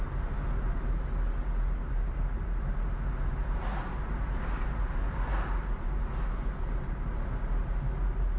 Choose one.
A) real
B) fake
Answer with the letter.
A